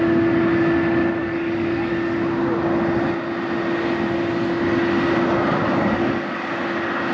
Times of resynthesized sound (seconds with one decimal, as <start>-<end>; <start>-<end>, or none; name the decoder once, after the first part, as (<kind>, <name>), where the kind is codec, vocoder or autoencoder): 1.2-1.9 (codec, DAC); 5.6-6.5